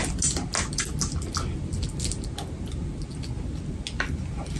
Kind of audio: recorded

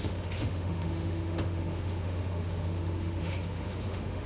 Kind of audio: remade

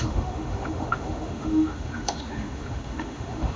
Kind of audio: remade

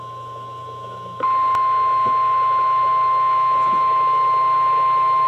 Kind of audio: remade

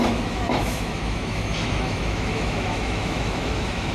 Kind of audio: remade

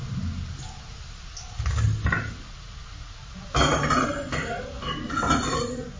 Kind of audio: recorded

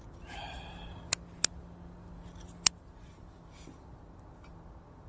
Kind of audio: recorded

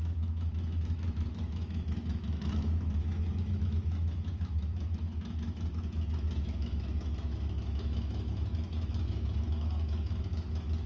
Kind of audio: remade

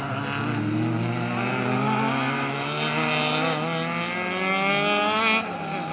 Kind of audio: recorded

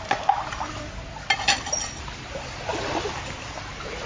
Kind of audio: recorded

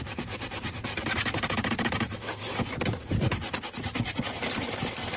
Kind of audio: recorded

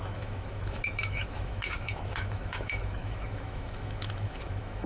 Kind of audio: remade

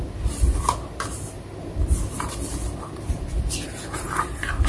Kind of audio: recorded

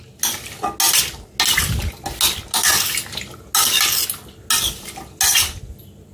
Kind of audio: recorded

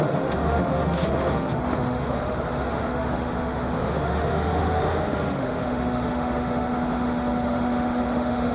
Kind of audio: remade